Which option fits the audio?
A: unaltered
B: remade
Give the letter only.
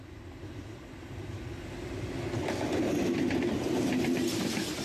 A